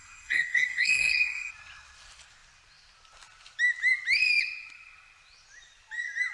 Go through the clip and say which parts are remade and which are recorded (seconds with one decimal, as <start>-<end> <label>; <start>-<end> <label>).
0.0-1.5 remade; 1.5-6.3 recorded